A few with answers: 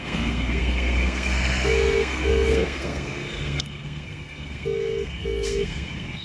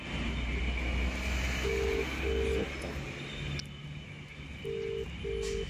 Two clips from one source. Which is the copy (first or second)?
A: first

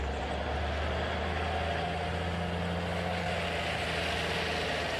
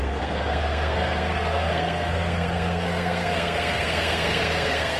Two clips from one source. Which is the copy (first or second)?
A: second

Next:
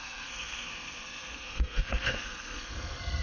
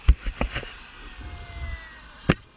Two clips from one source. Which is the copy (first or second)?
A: first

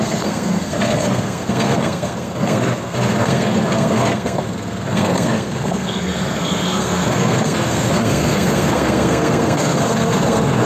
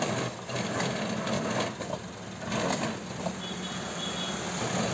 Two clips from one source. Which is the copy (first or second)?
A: first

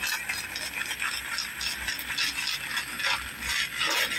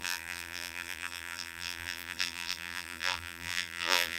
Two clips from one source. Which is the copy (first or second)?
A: second